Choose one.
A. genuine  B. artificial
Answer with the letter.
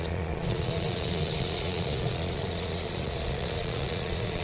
B